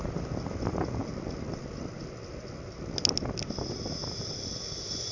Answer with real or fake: real